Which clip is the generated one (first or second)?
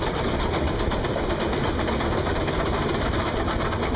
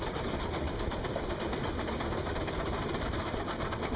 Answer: second